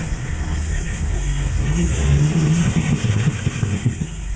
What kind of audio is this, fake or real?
fake